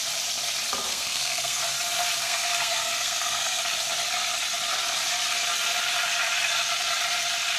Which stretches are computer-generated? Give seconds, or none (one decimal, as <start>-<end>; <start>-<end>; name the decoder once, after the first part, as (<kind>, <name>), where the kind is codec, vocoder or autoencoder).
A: 0.9-1.6 (codec, SNAC); 2.2-3.6